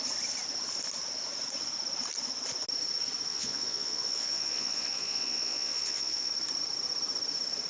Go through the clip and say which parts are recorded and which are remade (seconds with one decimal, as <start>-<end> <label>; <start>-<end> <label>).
0.0-3.3 recorded; 3.3-6.3 remade; 6.3-7.7 recorded